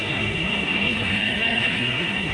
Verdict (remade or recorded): remade